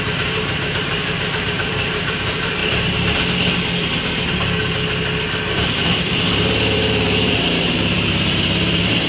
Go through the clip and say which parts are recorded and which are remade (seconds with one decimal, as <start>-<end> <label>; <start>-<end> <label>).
0.0-2.6 remade; 2.6-5.5 recorded; 5.5-9.1 remade